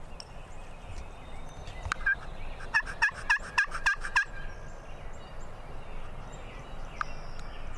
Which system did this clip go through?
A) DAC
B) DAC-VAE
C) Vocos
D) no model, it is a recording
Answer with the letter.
D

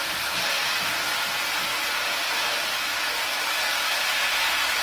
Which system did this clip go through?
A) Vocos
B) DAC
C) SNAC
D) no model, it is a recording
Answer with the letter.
D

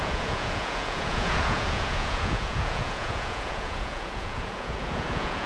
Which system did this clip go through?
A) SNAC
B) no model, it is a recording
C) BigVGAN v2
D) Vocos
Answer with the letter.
D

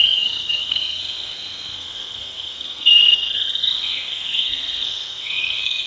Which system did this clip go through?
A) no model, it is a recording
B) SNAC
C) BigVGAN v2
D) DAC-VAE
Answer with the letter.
B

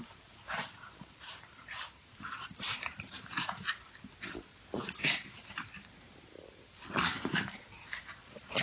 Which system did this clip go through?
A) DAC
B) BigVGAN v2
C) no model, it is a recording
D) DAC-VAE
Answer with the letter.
B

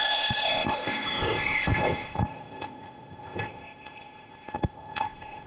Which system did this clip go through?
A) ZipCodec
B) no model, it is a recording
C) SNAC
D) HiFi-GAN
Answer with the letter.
A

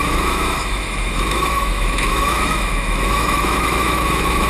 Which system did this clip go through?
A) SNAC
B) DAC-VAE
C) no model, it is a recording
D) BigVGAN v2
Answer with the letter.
B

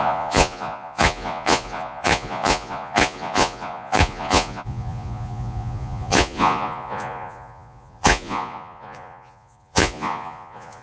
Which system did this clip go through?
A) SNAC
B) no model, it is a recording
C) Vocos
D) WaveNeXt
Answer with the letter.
C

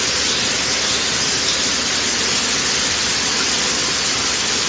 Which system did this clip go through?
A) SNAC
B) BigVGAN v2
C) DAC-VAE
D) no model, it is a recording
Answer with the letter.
D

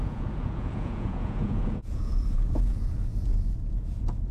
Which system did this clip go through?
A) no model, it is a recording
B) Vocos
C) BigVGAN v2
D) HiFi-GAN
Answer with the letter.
B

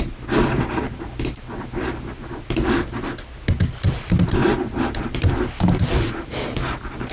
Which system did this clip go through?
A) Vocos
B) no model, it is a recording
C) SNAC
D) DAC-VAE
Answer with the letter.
B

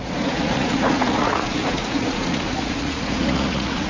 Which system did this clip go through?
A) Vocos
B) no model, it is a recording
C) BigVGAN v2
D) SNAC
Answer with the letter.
A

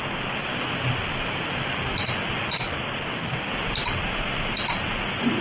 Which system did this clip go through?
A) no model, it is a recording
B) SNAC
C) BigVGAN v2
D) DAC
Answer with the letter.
A